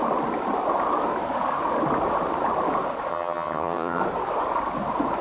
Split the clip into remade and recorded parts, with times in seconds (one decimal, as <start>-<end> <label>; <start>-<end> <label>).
0.0-3.1 recorded; 3.1-4.0 remade; 4.0-5.2 recorded